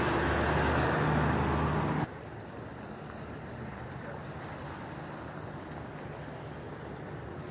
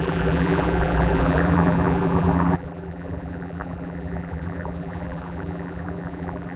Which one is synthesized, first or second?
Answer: second